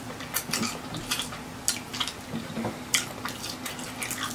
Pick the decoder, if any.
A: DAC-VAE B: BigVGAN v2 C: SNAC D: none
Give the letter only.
D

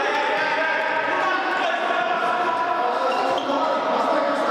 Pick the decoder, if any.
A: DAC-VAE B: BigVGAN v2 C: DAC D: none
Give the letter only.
D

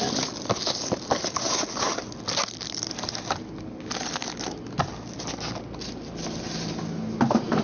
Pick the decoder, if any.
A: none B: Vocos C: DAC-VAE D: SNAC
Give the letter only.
A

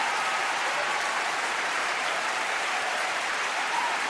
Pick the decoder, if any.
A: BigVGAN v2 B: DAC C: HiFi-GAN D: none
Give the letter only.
A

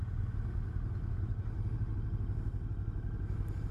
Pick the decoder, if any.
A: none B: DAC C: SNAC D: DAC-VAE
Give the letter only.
A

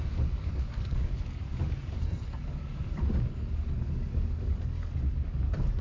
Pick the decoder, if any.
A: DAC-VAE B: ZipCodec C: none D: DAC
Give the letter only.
D